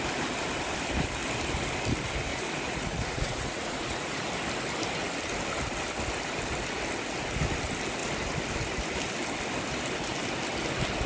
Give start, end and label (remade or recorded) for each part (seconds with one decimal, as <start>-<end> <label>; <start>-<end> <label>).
0.0-2.3 recorded; 2.3-4.2 remade; 4.2-11.1 recorded